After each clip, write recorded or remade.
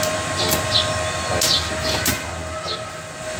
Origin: recorded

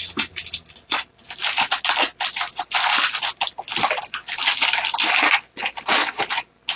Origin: recorded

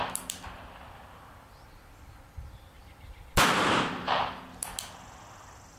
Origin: recorded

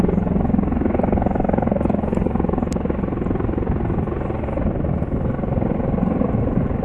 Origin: recorded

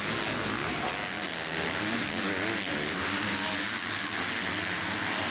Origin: recorded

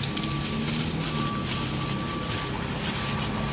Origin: recorded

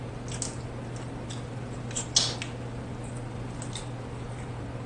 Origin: recorded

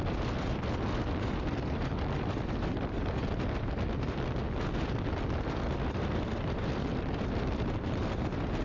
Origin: recorded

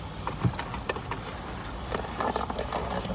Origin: recorded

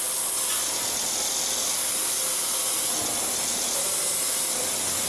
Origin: recorded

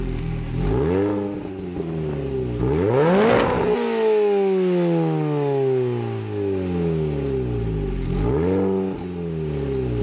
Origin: recorded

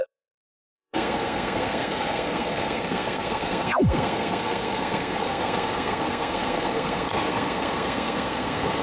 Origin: remade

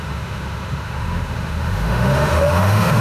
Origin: remade